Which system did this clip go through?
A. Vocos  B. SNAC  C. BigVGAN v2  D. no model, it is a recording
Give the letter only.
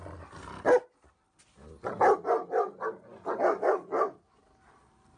D